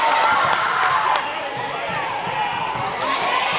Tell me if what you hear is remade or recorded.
recorded